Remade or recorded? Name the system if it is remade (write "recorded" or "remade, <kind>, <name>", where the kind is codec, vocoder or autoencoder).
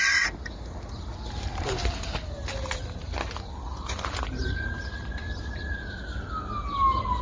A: recorded